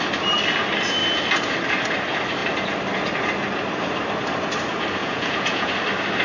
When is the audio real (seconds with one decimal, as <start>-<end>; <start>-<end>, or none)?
0.0-5.0; 5.7-6.2